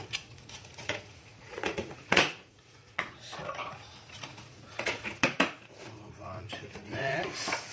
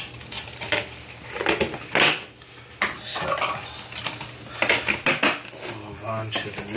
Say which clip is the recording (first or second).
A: second